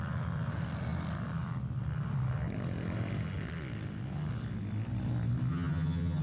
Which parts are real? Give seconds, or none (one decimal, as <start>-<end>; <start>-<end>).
0.0-5.5

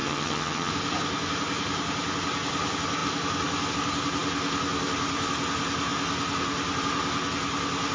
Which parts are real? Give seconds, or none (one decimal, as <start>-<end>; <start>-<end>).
0.7-7.9

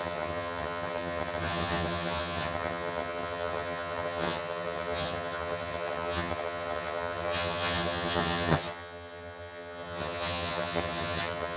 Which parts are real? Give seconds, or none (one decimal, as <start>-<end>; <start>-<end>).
none

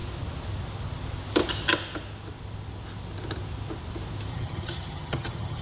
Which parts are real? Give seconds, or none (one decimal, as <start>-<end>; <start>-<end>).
0.0-4.3

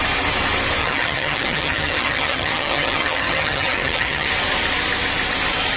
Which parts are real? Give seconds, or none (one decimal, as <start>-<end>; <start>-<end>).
0.0-0.8; 4.3-5.8